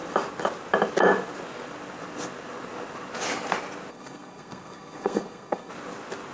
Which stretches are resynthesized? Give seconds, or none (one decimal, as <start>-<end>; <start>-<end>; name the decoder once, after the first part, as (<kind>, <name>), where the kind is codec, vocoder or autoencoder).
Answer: 3.9-5.7 (codec, SNAC)

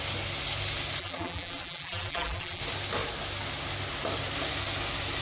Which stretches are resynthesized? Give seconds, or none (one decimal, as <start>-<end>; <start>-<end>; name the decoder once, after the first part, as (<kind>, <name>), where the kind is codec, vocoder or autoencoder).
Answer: 1.0-2.6 (vocoder, BigVGAN v2)